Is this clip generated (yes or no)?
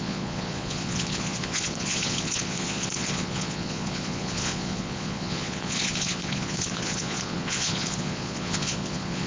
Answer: yes